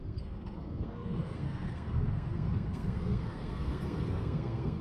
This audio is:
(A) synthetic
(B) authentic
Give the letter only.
A